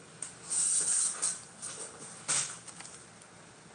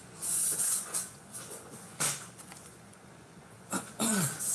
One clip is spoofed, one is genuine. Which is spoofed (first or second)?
second